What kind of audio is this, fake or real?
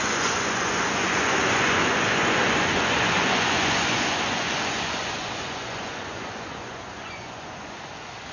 fake